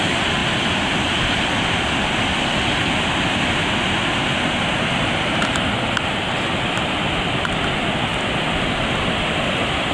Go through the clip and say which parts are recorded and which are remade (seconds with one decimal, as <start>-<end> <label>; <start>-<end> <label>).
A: 0.0-9.9 recorded

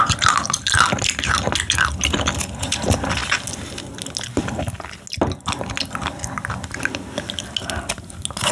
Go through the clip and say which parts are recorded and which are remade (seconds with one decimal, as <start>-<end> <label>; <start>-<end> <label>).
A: 0.0-8.5 recorded